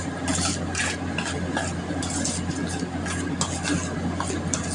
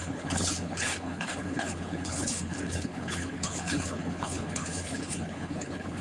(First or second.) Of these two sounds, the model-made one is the second